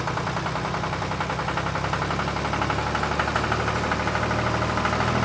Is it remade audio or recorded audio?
recorded